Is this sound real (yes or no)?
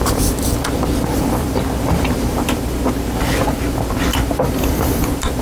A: no